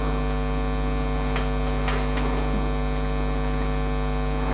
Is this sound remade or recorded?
recorded